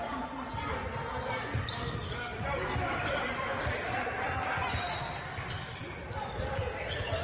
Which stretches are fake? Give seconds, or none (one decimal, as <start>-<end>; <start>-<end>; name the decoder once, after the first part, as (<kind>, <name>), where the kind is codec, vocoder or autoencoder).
none